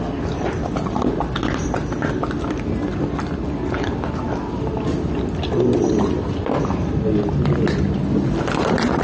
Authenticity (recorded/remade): recorded